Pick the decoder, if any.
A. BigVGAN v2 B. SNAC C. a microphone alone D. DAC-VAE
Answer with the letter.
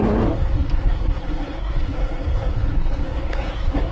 B